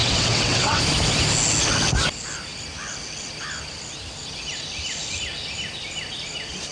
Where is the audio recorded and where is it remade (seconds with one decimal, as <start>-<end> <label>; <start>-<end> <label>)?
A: 0.0-0.8 remade; 0.8-6.7 recorded